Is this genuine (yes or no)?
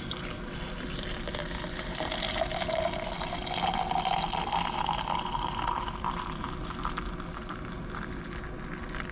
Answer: yes